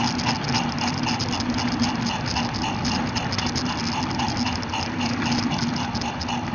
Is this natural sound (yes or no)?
yes